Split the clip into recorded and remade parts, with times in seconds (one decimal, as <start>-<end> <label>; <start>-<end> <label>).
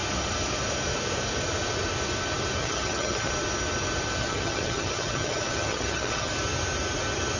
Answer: 0.0-2.6 recorded; 2.6-3.3 remade; 3.3-4.2 recorded; 4.2-6.3 remade; 6.3-7.4 recorded